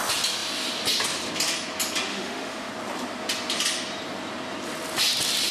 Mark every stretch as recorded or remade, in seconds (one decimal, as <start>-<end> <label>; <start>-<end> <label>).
0.0-2.1 recorded; 2.1-2.7 remade; 2.7-5.5 recorded